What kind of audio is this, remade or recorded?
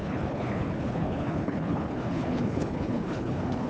remade